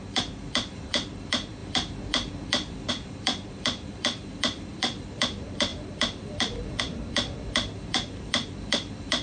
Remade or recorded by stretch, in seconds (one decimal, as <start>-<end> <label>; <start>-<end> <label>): 0.0-9.2 remade